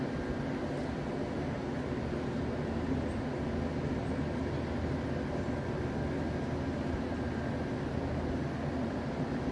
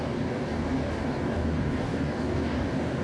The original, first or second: first